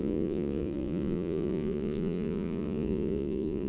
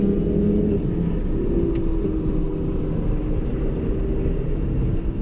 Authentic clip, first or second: second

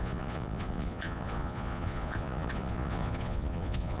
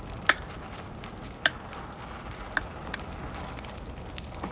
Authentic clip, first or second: second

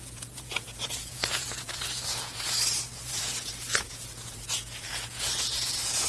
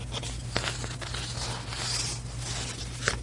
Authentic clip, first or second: second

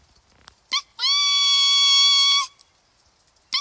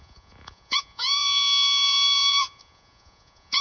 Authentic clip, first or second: first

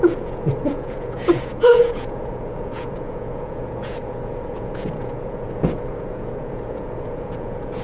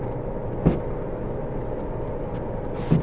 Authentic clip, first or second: second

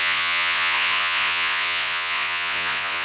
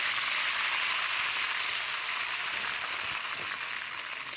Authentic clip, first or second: second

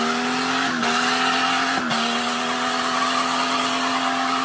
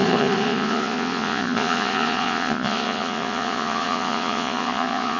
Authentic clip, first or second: first